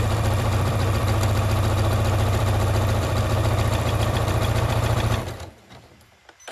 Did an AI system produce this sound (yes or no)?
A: yes